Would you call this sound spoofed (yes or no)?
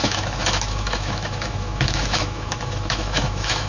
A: yes